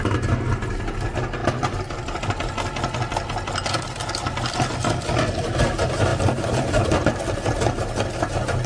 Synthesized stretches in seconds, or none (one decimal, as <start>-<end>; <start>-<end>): 1.4-2.2; 6.1-7.1